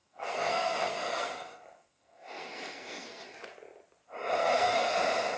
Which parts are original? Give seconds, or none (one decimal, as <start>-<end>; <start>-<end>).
3.2-4.4; 5.0-5.4

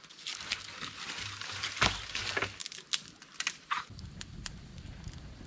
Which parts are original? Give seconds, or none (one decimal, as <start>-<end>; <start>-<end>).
0.0-5.5

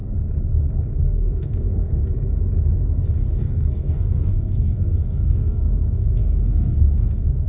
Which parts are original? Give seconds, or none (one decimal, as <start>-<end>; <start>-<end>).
0.0-1.0; 2.0-3.4

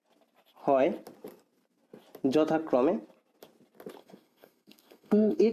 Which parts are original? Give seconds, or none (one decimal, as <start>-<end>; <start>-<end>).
0.0-4.0

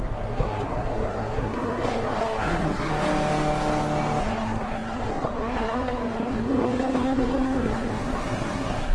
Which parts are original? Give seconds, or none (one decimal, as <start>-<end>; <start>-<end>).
2.9-4.2

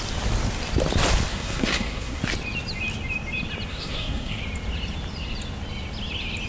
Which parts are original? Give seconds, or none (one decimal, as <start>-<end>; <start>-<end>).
0.0-1.3; 2.2-3.7; 4.4-6.5

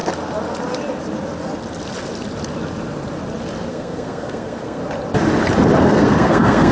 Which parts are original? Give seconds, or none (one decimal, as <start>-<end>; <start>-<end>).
0.0-3.7; 4.8-5.8